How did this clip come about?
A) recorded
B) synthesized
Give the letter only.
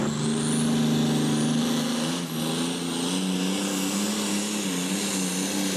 A